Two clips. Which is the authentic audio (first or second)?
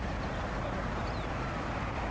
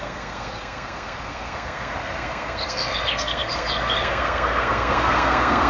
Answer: first